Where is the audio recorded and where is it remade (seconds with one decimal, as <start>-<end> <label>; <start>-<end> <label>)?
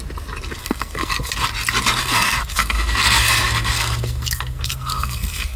0.0-0.6 recorded; 0.6-1.3 remade; 1.3-2.0 recorded; 2.0-5.6 remade